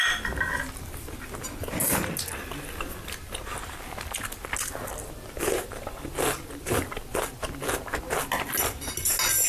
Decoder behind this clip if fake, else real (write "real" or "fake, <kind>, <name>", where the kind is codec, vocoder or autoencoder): real